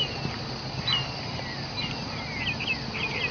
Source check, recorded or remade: recorded